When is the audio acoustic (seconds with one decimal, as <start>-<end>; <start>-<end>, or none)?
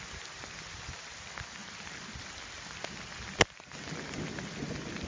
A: 0.0-5.1